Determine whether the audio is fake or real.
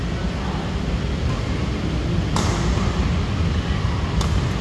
real